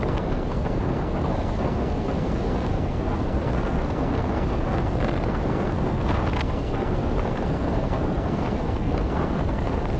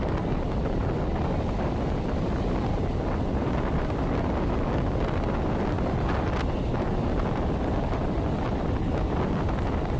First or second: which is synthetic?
first